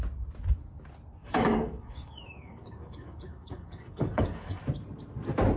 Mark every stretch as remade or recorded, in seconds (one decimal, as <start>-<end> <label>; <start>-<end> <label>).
0.0-1.2 recorded; 1.2-4.6 remade; 4.6-5.6 recorded